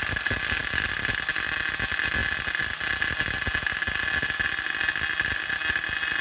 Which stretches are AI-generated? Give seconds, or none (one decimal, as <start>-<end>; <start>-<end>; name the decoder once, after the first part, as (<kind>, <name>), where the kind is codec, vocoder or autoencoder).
none